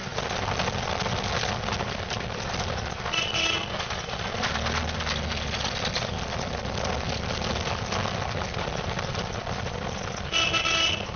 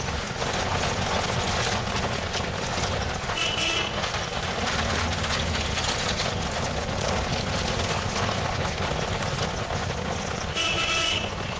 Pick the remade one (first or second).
second